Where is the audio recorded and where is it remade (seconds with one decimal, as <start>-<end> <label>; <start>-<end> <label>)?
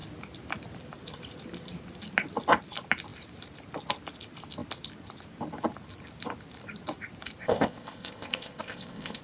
0.0-7.4 recorded; 7.4-9.2 remade